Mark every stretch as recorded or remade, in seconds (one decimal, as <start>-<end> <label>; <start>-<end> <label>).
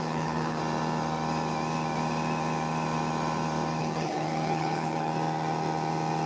0.0-0.6 remade; 0.6-3.8 recorded; 3.8-5.1 remade; 5.1-6.3 recorded